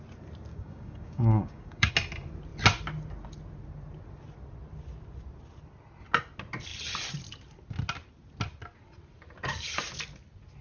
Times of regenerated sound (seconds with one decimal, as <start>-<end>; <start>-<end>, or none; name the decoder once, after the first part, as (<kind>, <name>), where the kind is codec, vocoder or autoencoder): 0.5-1.9 (codec, DAC)